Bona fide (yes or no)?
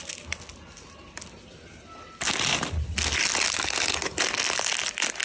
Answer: yes